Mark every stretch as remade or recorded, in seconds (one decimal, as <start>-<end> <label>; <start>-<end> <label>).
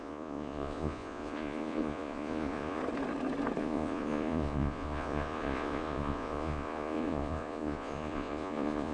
0.0-2.8 remade; 2.8-3.6 recorded; 3.6-8.9 remade